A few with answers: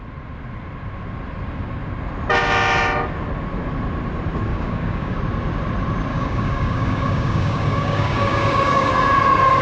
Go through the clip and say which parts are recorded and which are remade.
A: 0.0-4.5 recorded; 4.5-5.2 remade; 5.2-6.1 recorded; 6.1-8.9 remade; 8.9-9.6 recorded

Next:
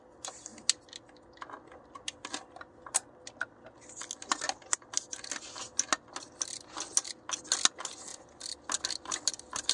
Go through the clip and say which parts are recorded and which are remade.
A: 0.0-9.7 recorded

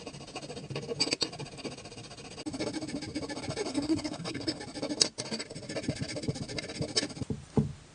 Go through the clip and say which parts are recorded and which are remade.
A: 0.0-3.7 recorded; 3.7-4.6 remade; 4.6-7.9 recorded

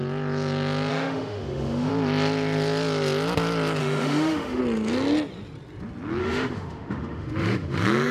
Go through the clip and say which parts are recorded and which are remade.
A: 0.0-0.9 recorded; 0.9-1.9 remade; 1.9-3.8 recorded; 3.8-4.6 remade; 4.6-6.2 recorded; 6.2-8.1 remade

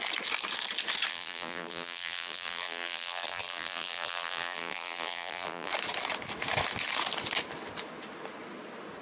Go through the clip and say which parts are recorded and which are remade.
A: 0.0-1.1 recorded; 1.1-5.7 remade; 5.7-9.0 recorded

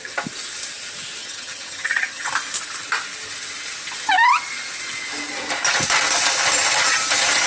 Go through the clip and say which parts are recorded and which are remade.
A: 0.0-1.2 recorded; 1.2-2.3 remade; 2.3-7.5 recorded

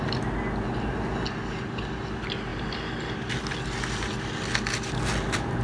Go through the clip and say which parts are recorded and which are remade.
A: 0.0-5.6 recorded